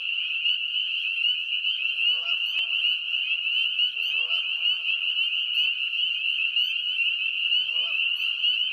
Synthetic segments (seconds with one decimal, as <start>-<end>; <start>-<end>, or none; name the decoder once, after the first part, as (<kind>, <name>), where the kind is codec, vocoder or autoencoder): none